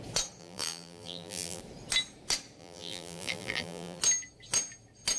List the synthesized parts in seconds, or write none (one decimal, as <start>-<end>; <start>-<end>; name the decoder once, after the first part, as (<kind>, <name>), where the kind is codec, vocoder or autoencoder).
0.4-1.6 (vocoder, BigVGAN v2); 2.6-4.0